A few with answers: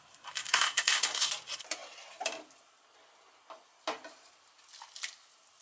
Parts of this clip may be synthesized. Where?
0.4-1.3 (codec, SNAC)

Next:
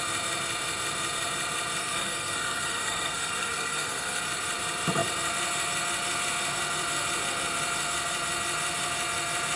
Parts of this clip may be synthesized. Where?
1.8-4.2 (codec, SNAC)

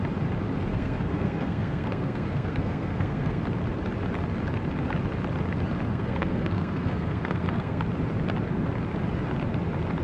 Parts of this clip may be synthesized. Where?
0.7-3.4 (codec, SNAC); 5.9-7.8

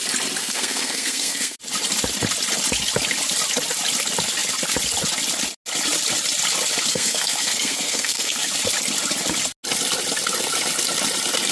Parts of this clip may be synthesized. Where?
0.4-1.6 (codec, SNAC); 6.9-8.5

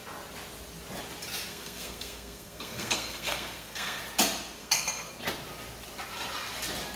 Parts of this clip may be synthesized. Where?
1.5-4.0 (codec, SNAC); 4.6-5.1

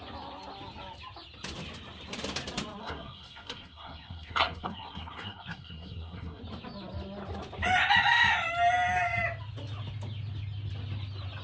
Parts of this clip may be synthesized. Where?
2.8-6.4 (codec, SNAC)